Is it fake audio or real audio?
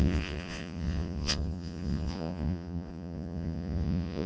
fake